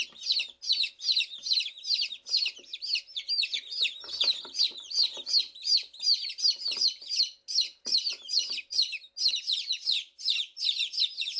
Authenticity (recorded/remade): recorded